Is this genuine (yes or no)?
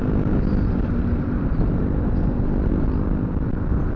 yes